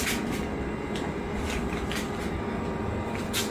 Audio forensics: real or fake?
real